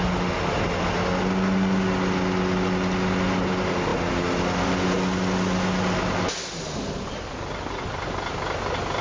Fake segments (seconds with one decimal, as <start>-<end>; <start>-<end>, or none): none